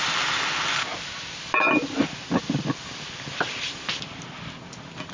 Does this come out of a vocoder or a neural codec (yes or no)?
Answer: no